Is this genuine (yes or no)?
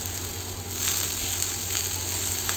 yes